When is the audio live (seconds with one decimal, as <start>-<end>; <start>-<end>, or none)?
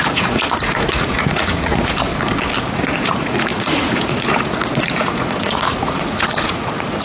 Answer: 2.1-2.7